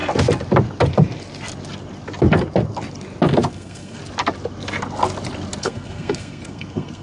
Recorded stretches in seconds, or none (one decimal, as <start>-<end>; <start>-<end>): 0.0-3.5; 4.0-5.6

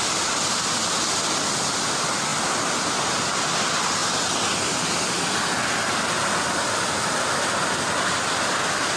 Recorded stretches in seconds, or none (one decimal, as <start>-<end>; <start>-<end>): 0.0-9.0

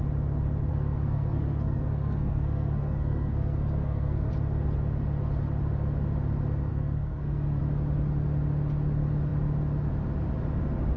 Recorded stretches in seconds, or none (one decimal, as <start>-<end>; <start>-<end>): 0.0-0.7; 4.3-6.7; 7.6-11.0

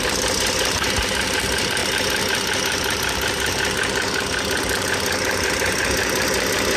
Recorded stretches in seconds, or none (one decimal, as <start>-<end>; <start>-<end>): 0.0-6.8

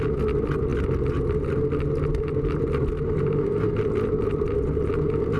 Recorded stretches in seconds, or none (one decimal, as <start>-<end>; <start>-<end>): 0.0-5.4

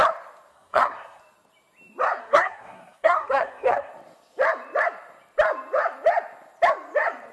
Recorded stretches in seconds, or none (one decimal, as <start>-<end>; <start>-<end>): 0.0-0.5; 1.2-2.2; 3.9-7.3